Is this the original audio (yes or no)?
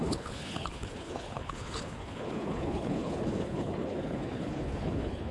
no